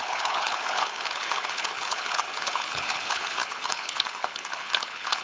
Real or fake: fake